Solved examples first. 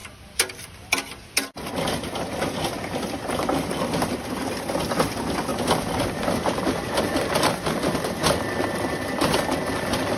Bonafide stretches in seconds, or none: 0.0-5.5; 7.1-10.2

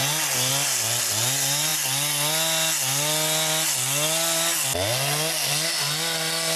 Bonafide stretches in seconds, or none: 0.0-6.6

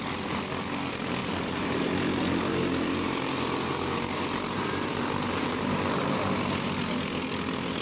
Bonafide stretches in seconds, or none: 0.0-1.2; 5.8-7.8

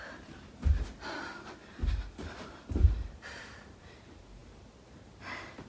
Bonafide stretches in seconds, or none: 0.6-1.5; 4.4-5.7

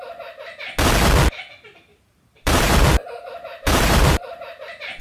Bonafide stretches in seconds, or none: 0.0-1.9